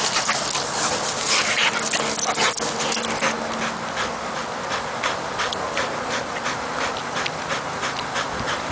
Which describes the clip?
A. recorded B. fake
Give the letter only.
A